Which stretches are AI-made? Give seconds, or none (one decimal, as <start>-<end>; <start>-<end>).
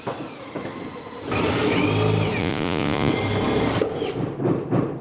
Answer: 2.4-3.1